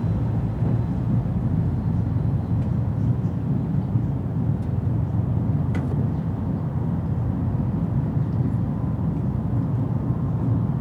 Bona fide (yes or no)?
yes